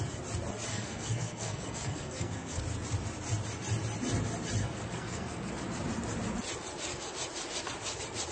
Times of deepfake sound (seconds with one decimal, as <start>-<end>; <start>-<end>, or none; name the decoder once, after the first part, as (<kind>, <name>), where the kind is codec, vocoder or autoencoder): 0.7-2.6 (codec, SNAC); 4.6-5.5